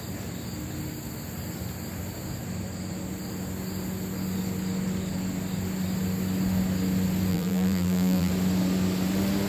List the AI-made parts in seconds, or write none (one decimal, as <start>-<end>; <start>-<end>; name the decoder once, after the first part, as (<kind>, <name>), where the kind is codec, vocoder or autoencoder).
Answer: 7.3-8.3 (vocoder, BigVGAN v2)